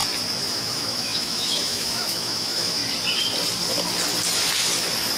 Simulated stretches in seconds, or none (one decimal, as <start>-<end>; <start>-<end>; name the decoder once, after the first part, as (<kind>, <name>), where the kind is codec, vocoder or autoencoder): 0.5-2.8 (autoencoder, DAC-VAE)